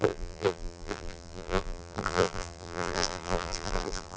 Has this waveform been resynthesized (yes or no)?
yes